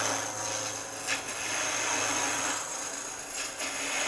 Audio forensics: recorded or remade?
recorded